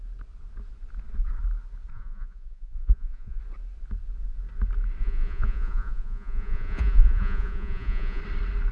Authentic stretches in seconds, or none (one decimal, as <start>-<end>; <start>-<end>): 0.0-1.9; 3.4-5.0; 8.2-8.7